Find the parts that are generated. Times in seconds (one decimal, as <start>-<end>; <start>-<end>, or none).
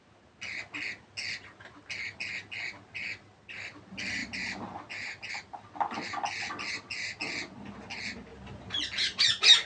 none